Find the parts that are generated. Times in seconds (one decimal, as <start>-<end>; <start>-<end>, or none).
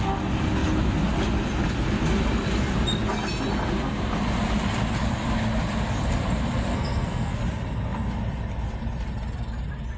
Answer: 6.7-7.4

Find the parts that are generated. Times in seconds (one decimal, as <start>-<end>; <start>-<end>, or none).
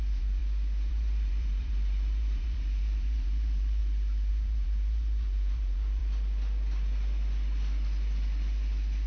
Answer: 0.0-0.4; 0.9-3.8; 4.3-6.0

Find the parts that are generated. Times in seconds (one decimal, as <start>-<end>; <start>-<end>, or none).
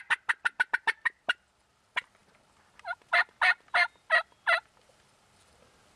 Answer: none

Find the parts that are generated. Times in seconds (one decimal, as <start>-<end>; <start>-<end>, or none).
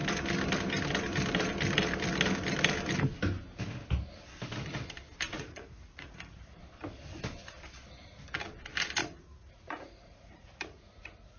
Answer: 5.3-6.6; 9.0-11.4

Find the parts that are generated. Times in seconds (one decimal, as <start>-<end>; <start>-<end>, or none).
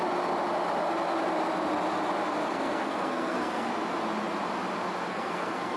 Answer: 2.4-3.7; 5.1-5.8